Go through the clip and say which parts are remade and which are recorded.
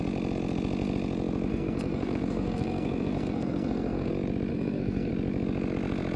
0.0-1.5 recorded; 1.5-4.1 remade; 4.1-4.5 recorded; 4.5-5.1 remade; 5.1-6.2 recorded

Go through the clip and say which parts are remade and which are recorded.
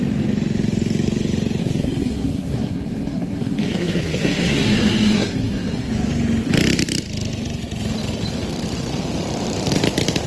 0.0-1.6 recorded; 1.6-5.9 remade; 5.9-10.3 recorded